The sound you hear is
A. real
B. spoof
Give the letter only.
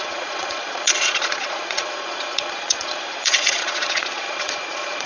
B